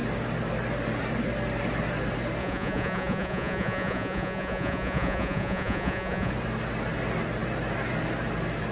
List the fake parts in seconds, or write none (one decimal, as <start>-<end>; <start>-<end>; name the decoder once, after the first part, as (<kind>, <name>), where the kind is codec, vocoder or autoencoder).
2.4-6.3 (vocoder, Vocos)